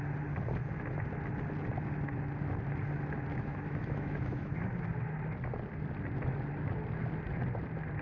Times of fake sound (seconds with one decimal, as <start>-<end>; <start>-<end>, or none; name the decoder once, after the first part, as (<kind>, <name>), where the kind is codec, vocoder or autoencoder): 3.3-4.5 (autoencoder, DAC-VAE)